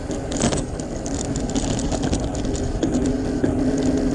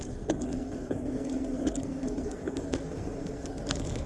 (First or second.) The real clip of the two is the first